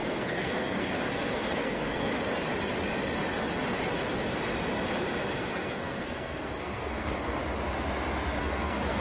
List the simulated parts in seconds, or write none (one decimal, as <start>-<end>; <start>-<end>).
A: 0.0-2.1; 5.4-7.4; 8.4-9.0